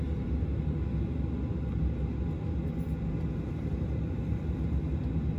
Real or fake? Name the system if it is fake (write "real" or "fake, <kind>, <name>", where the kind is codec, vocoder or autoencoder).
real